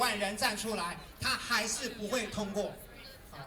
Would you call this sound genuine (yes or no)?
no